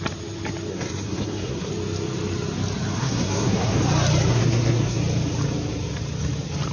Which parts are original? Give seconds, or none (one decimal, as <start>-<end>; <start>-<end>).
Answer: 0.0-0.7; 1.7-3.0; 3.8-4.3; 5.0-6.7